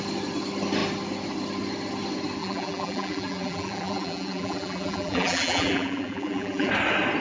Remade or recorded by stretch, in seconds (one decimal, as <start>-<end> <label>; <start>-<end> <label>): 0.0-2.4 recorded; 2.4-6.7 remade; 6.7-7.2 recorded